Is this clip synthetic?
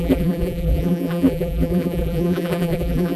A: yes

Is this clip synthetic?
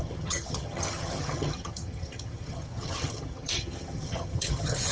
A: yes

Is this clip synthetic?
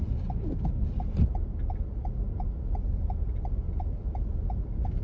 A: no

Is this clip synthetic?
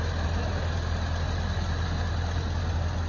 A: no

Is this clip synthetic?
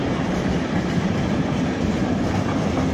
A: no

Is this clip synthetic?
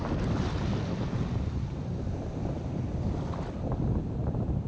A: no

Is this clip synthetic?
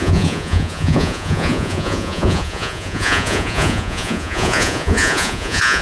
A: yes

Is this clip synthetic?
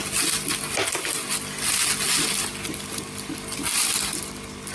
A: no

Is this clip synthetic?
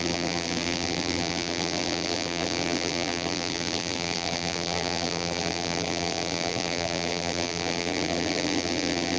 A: yes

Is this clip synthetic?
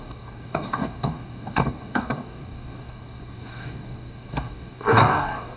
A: yes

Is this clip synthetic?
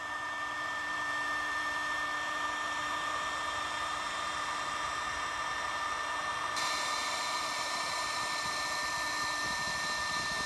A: yes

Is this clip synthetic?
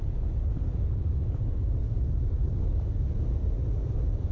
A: no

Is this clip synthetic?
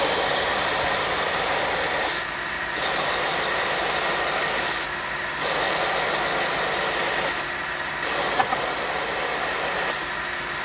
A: no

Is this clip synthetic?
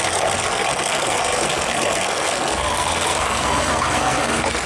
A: yes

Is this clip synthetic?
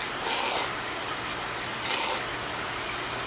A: no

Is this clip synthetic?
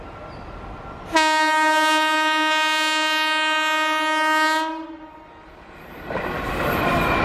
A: no